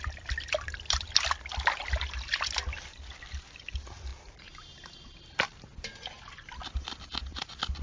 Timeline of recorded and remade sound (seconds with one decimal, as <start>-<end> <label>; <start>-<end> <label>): 0.0-7.8 recorded